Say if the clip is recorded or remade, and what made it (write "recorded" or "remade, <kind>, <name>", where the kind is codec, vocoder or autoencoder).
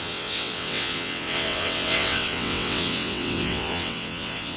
remade, vocoder, WaveNeXt